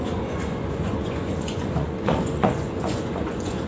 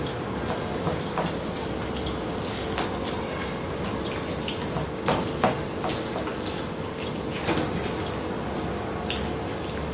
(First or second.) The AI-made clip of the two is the first